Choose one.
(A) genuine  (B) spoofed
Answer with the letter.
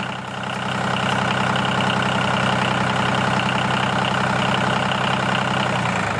A